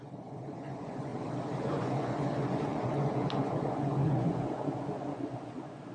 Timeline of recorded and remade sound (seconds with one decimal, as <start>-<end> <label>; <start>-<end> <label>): 0.0-1.1 remade; 1.1-1.6 recorded; 1.6-5.9 remade